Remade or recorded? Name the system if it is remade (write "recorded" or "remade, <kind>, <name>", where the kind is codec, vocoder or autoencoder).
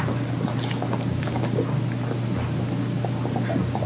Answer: recorded